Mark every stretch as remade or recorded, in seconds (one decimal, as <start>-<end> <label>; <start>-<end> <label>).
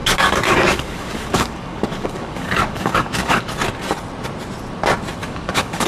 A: 0.0-3.5 remade; 3.5-5.2 recorded; 5.2-5.9 remade